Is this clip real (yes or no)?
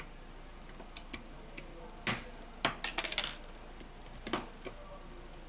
yes